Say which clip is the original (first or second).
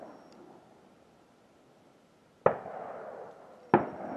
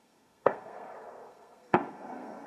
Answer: first